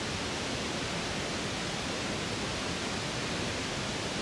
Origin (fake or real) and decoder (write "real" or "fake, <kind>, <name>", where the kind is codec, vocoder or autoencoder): real